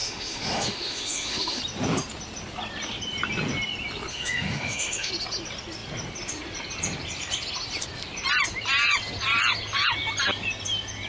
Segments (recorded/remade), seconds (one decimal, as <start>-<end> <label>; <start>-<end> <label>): 0.0-1.6 remade; 1.6-4.1 recorded; 4.1-5.1 remade; 5.1-11.1 recorded